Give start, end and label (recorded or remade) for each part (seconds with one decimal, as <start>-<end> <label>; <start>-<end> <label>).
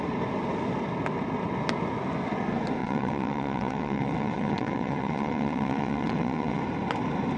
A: 0.0-2.8 recorded; 2.8-6.6 remade; 6.6-7.4 recorded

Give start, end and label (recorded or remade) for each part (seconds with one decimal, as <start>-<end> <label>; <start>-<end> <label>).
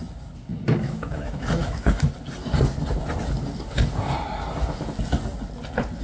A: 0.0-0.5 recorded; 0.5-2.1 remade; 2.1-6.0 recorded